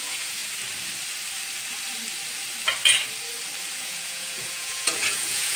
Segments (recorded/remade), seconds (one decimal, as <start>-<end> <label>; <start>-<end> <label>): 0.0-0.4 remade; 0.4-3.8 recorded; 3.8-5.6 remade